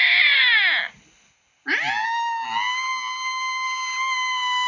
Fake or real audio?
real